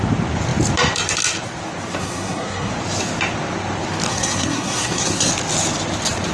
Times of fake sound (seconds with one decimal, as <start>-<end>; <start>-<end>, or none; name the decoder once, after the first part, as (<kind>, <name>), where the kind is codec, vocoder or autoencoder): 2.0-2.7 (codec, SNAC); 4.1-5.3